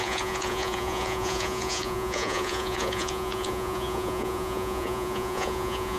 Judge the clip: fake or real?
fake